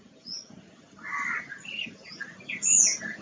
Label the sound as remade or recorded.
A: recorded